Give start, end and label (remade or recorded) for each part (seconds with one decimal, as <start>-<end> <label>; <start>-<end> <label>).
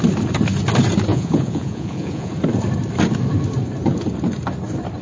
0.0-1.1 recorded; 1.1-2.3 remade; 2.3-5.0 recorded